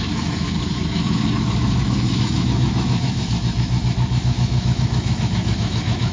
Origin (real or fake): fake